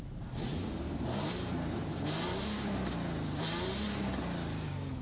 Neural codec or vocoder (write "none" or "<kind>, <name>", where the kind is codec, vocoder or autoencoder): vocoder, BigVGAN v2